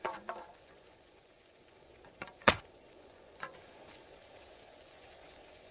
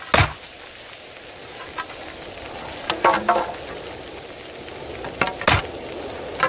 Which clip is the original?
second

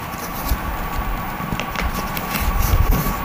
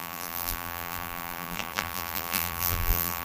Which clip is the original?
first